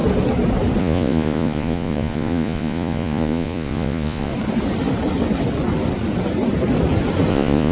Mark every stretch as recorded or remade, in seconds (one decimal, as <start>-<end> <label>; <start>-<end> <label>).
0.0-0.8 recorded; 0.8-4.3 remade; 4.3-7.3 recorded; 7.3-7.7 remade